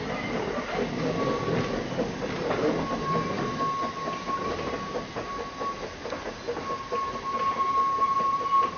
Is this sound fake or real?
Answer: real